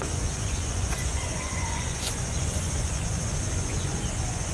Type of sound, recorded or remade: remade